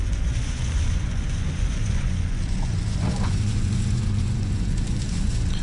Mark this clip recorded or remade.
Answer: remade